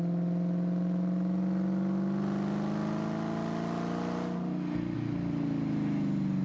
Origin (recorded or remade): recorded